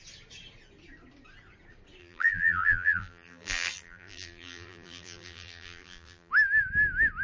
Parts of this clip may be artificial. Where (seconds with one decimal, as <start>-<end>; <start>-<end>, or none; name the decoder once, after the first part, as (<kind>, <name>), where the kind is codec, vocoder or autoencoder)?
2.0-6.3 (vocoder, BigVGAN v2)